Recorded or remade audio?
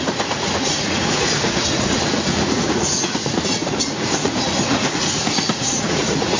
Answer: remade